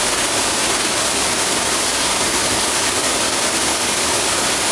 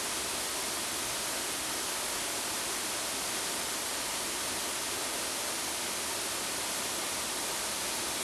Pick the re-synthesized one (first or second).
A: first